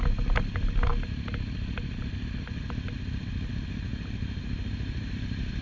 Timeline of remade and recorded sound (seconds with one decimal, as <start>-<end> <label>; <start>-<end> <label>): 0.0-3.9 recorded; 3.9-5.6 remade